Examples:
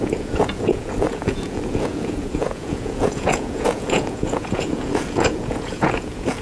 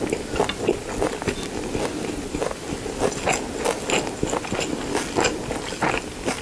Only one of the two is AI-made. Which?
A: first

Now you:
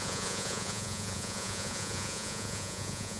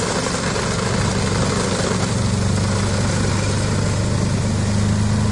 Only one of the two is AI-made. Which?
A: first